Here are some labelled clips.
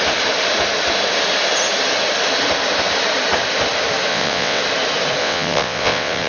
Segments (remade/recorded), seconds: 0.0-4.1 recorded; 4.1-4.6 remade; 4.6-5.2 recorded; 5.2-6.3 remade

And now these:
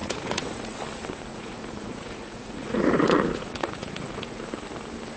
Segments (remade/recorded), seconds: 0.0-0.8 remade; 0.8-1.3 recorded; 1.3-4.4 remade; 4.4-5.2 recorded

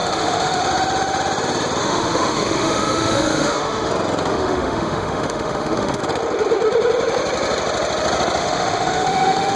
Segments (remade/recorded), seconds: 0.0-0.6 remade; 0.6-1.8 recorded; 1.8-3.9 remade; 3.9-4.3 recorded; 4.3-6.0 remade; 6.0-8.4 recorded; 8.4-9.6 remade

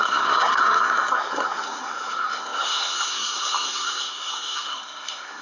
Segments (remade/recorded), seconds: 0.0-5.4 remade

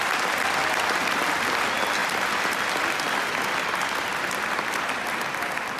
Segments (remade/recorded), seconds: 0.0-5.8 recorded

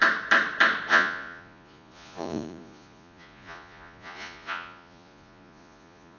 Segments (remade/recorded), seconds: 0.0-0.9 recorded; 0.9-6.2 remade

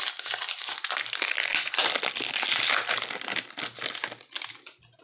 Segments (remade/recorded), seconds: 0.0-5.0 recorded